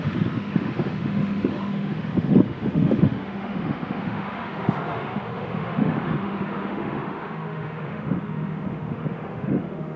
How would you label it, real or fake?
fake